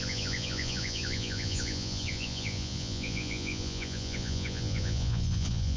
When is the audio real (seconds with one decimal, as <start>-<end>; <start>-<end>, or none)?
none